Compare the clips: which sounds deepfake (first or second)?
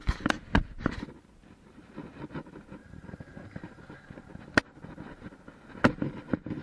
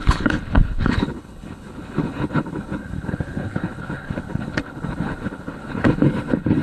second